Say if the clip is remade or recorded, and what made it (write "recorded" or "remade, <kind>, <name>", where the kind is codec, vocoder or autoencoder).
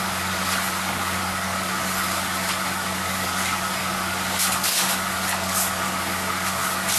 remade, codec, DAC